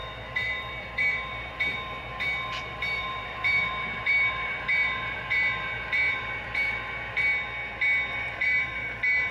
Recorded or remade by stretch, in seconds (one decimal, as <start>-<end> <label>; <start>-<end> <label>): 0.0-7.3 remade; 7.3-8.1 recorded; 8.1-9.3 remade